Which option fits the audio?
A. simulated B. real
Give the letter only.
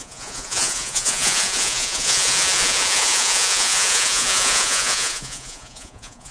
A